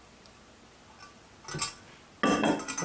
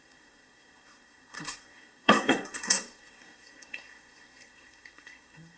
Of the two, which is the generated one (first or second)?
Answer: second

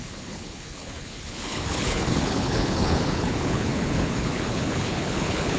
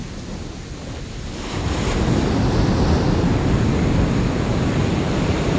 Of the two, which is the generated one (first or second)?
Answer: first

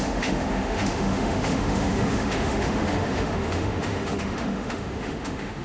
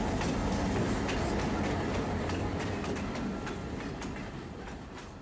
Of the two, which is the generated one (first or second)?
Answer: first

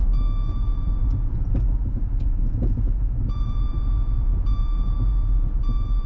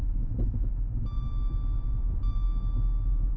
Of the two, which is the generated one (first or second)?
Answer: first